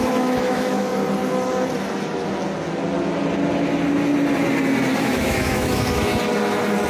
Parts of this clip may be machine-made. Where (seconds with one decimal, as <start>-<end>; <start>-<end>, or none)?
0.0-0.9; 5.0-6.1